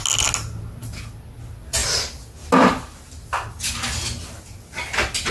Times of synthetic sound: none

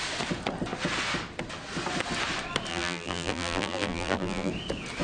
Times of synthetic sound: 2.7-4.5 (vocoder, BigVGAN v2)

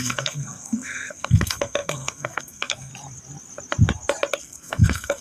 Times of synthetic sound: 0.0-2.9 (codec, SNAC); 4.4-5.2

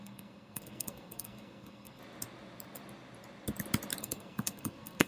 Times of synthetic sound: 0.0-2.0 (codec, SNAC); 4.0-5.1

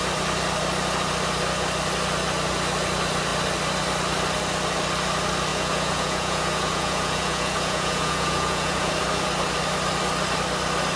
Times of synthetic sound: 5.5-8.9 (vocoder, Vocos)

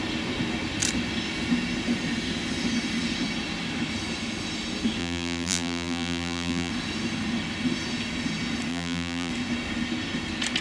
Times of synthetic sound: 5.0-6.7 (vocoder, BigVGAN v2); 8.7-9.3